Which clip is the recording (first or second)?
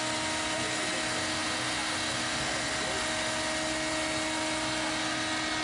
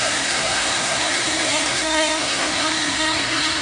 first